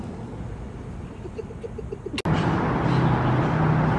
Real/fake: real